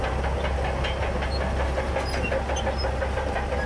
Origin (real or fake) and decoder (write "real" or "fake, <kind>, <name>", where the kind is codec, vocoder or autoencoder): real